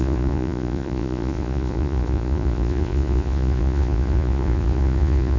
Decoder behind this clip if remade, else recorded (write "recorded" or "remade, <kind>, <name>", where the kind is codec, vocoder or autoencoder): remade, vocoder, Vocos